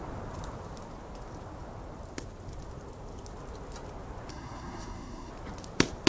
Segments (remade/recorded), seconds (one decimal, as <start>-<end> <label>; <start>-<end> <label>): 0.0-4.3 recorded; 4.3-5.3 remade; 5.3-6.1 recorded